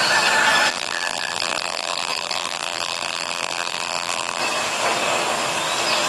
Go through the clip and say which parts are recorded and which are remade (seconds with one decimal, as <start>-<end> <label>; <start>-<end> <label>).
0.0-0.7 recorded; 0.7-4.4 remade; 4.4-6.1 recorded